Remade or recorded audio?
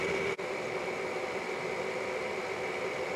recorded